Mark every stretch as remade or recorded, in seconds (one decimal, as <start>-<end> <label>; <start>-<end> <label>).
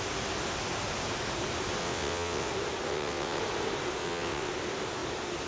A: 0.0-1.8 recorded; 1.8-2.5 remade; 2.5-2.9 recorded; 2.9-3.4 remade; 3.4-4.0 recorded; 4.0-4.5 remade; 4.5-5.5 recorded